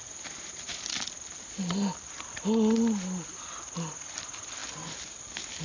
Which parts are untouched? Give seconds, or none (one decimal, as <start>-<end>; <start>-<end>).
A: 0.0-5.6